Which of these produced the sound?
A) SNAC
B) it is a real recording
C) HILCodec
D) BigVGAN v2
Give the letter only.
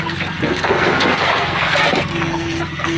A